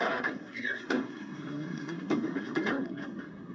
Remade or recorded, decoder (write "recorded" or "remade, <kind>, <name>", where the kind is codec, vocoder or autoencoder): remade, codec, SNAC